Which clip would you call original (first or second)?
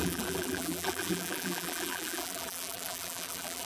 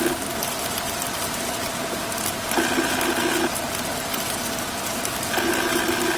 second